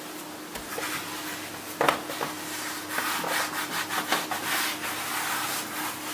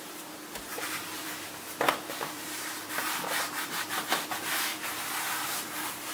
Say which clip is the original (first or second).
first